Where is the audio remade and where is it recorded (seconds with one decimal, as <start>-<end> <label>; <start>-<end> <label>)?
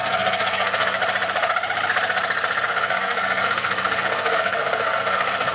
0.0-1.0 remade; 1.0-2.7 recorded; 2.7-5.5 remade